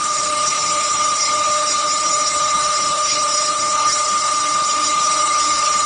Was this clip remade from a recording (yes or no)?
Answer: yes